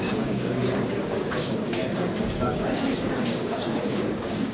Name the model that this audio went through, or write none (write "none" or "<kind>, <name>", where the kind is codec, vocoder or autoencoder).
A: codec, DAC